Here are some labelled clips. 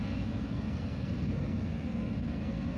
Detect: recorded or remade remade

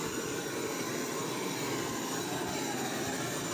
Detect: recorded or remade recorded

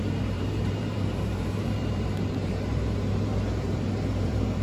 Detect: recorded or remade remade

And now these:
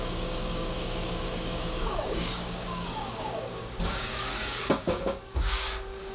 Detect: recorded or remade remade